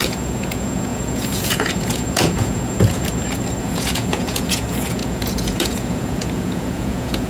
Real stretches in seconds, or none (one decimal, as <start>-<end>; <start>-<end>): 3.1-3.6